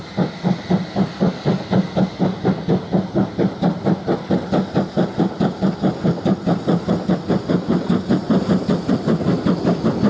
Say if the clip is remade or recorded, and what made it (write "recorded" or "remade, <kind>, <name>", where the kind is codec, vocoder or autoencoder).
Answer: recorded